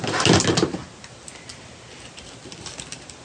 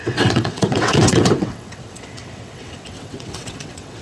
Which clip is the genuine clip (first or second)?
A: first